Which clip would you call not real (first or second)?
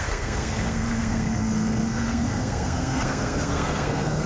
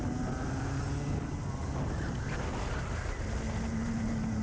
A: first